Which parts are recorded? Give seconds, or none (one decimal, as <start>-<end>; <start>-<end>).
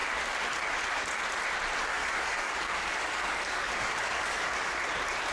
0.0-1.9; 4.8-5.3